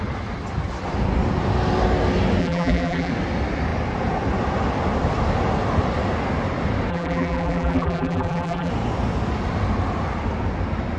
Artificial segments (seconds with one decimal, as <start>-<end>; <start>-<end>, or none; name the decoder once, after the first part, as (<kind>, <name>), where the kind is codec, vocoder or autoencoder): 2.4-3.1 (vocoder, BigVGAN v2); 6.9-8.7